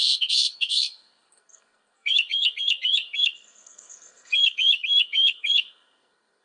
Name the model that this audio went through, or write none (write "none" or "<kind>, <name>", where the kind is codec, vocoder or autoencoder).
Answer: codec, SNAC